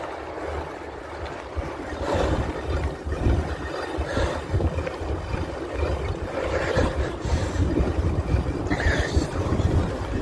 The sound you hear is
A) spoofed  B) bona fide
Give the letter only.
B